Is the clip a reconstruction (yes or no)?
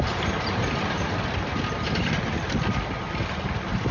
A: no